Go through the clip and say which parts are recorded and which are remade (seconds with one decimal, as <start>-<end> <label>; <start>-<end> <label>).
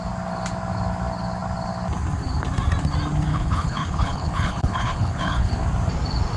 0.0-3.3 recorded; 3.3-5.5 remade; 5.5-6.4 recorded